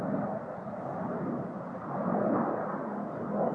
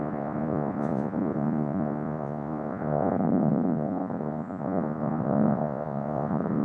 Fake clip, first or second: second